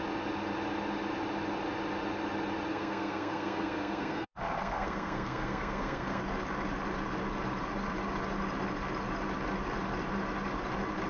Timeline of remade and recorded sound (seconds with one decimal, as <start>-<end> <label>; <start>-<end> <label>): 0.0-2.7 recorded; 2.7-6.2 remade; 6.2-11.1 recorded